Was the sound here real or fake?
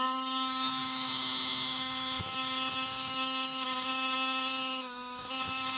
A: fake